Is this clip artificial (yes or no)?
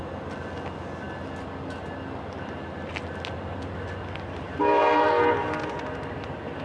no